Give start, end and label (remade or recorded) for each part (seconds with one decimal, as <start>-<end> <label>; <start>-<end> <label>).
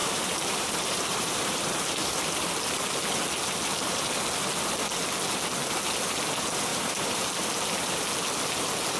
0.0-2.1 remade; 2.1-3.7 recorded; 3.7-4.2 remade; 4.2-6.7 recorded; 6.7-7.2 remade; 7.2-9.0 recorded